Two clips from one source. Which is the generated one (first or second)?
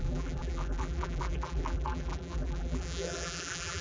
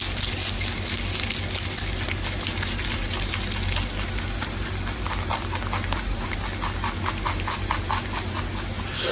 first